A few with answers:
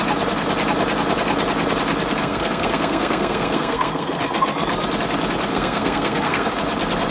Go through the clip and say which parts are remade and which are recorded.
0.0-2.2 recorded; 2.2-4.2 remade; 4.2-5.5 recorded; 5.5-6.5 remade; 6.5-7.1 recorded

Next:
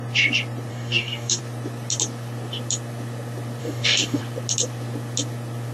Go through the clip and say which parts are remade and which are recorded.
0.0-0.7 recorded; 0.7-1.4 remade; 1.4-3.6 recorded; 3.6-4.2 remade; 4.2-5.7 recorded

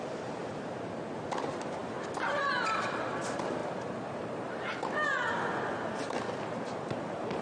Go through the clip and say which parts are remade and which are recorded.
0.0-0.4 remade; 0.4-1.4 recorded; 1.4-1.8 remade; 1.8-2.8 recorded; 2.8-4.7 remade; 4.7-6.7 recorded; 6.7-7.4 remade

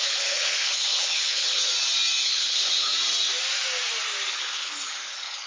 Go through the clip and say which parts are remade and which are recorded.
0.0-1.7 remade; 1.7-2.2 recorded; 2.2-2.9 remade; 2.9-4.3 recorded; 4.3-5.5 remade

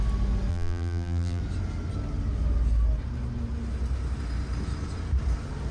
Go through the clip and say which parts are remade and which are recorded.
0.0-0.5 recorded; 0.5-1.4 remade; 1.4-5.7 recorded

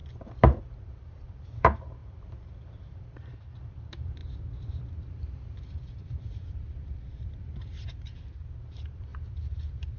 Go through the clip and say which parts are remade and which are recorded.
0.0-0.6 recorded; 0.6-10.0 remade